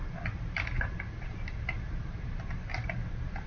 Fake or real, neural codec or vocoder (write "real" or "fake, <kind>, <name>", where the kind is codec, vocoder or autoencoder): real